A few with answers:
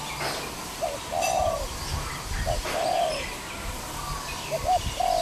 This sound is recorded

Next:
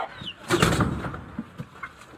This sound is recorded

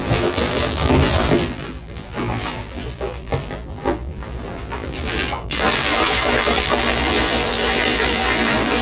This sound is remade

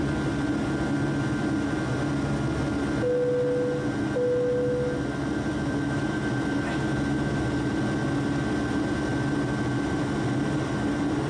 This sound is recorded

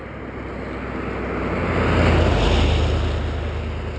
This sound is recorded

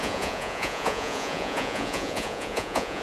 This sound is remade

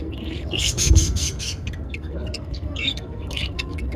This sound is remade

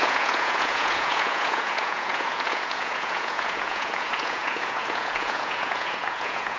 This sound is remade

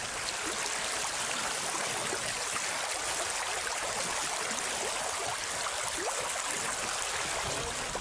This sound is recorded